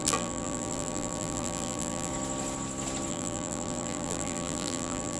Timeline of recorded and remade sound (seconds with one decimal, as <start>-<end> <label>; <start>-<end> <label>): 0.0-2.1 remade; 2.1-3.1 recorded; 3.1-5.2 remade